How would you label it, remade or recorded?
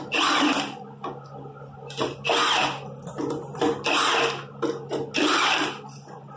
recorded